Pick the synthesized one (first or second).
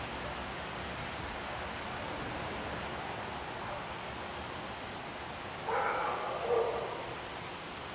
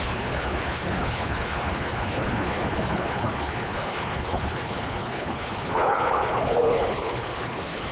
second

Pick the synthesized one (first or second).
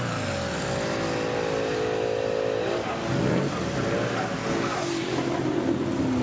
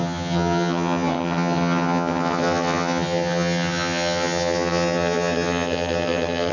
second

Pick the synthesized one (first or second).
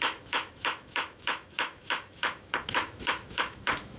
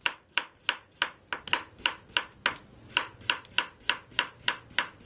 first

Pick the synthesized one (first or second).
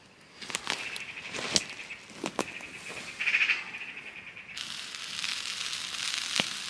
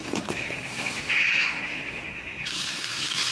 second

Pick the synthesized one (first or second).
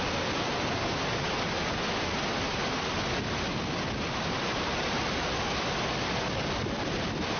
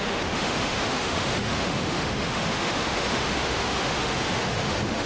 second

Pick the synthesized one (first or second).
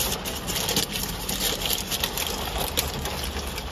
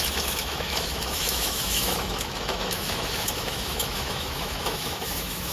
second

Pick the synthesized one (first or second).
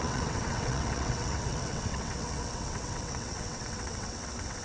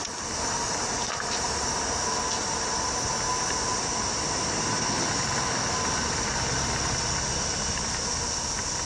first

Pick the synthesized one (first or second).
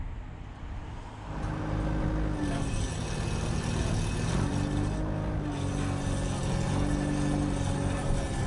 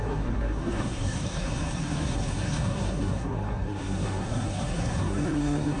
second